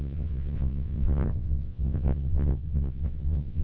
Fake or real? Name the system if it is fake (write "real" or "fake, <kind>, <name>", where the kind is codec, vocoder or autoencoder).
fake, vocoder, WaveNeXt